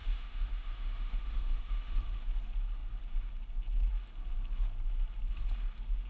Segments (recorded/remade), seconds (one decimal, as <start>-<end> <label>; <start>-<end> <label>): 0.0-2.0 remade; 2.0-6.1 recorded